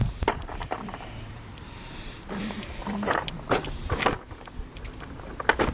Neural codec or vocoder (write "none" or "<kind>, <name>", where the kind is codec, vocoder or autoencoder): vocoder, BigVGAN v2